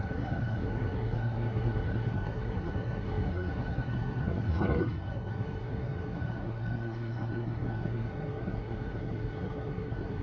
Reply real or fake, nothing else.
fake